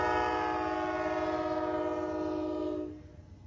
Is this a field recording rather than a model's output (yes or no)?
yes